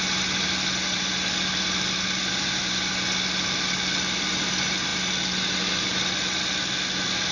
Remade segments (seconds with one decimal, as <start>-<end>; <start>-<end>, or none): none